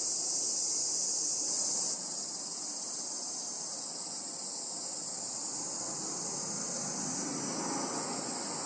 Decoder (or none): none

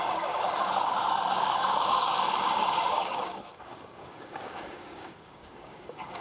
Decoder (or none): codec, DAC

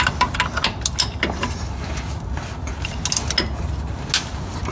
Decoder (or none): none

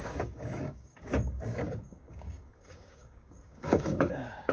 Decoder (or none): codec, DAC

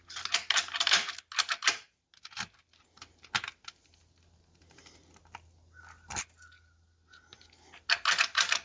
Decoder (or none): none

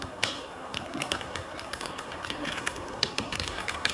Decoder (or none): codec, SNAC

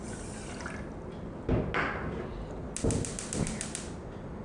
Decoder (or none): none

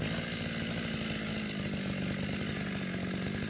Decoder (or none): none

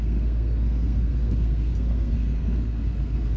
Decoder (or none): codec, SNAC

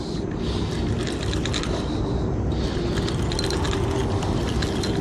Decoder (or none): none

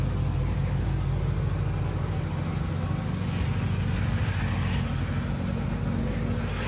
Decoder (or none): none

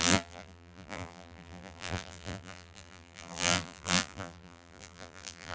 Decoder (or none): vocoder, BigVGAN v2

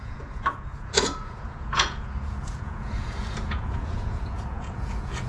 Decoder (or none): vocoder, Vocos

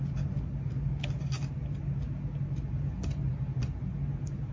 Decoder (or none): none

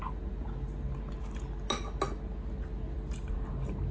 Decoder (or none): none